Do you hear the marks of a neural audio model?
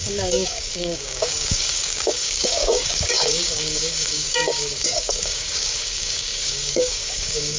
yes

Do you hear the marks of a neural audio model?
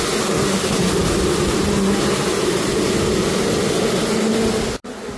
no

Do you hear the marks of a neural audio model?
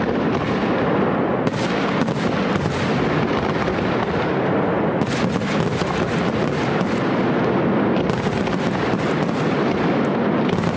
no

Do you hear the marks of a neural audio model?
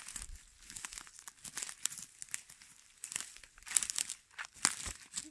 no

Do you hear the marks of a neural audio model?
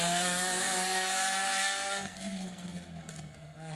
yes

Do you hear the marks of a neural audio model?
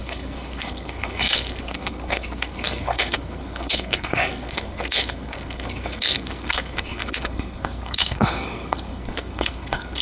yes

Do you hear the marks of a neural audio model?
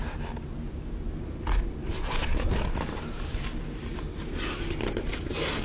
no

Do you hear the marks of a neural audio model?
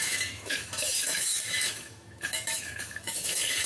yes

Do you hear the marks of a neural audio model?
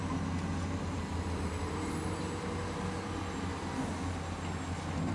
no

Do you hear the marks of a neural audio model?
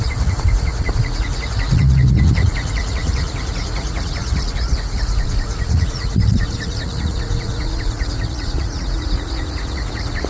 yes